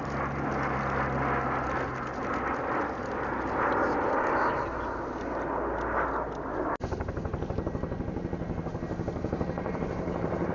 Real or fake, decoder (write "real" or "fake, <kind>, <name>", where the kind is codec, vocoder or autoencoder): real